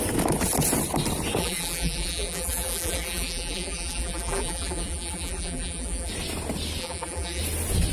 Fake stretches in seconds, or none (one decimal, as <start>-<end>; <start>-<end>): 1.4-6.1; 6.8-7.4